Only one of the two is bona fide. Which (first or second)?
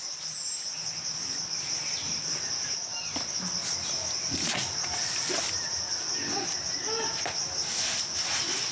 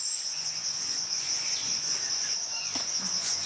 first